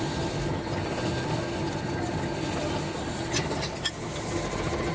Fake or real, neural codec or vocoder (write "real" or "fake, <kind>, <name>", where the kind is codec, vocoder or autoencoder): real